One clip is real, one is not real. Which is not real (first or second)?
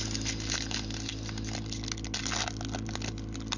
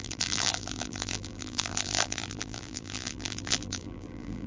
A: second